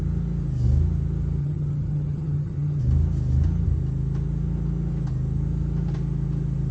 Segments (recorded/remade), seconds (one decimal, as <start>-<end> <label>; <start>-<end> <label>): 0.0-1.4 recorded; 1.4-2.8 remade; 2.8-6.7 recorded